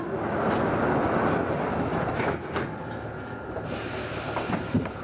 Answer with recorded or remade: recorded